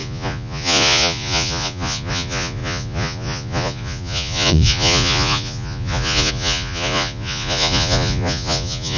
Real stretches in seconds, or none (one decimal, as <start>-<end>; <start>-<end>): none